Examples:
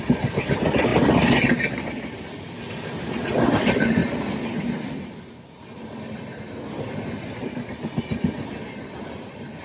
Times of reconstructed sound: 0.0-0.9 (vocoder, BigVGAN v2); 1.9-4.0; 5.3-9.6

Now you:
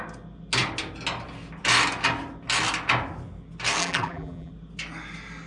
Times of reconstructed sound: 3.8-4.5 (vocoder, BigVGAN v2)

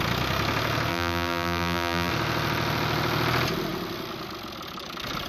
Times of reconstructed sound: 0.9-2.1 (vocoder, BigVGAN v2)

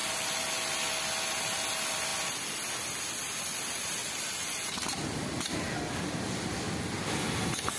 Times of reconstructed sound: 4.0-6.9 (vocoder, BigVGAN v2)

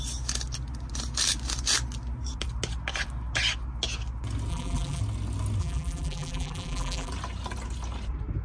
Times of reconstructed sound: 4.5-5.0 (vocoder, BigVGAN v2); 5.6-7.1